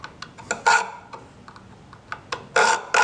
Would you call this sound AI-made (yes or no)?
no